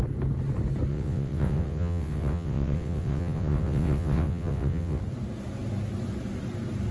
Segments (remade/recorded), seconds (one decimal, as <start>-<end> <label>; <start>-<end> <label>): 0.0-0.9 recorded; 0.9-5.0 remade; 5.0-6.9 recorded